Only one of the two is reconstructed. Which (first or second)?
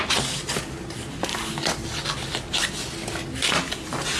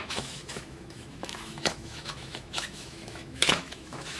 second